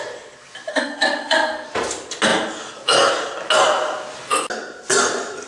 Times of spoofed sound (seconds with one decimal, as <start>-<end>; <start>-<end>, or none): 0.7-1.7